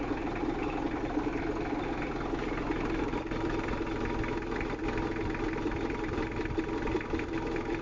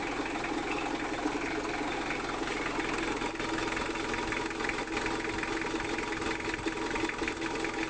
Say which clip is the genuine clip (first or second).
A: second